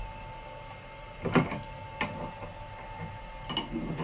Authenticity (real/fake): real